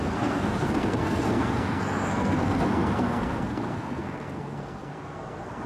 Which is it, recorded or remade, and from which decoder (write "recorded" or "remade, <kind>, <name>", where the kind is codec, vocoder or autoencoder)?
remade, codec, SNAC